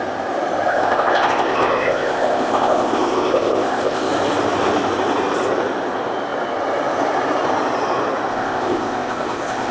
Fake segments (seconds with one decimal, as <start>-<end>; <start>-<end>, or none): 0.7-4.1; 8.3-9.7